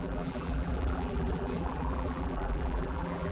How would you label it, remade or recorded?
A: remade